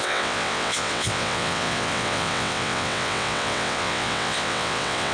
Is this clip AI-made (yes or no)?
yes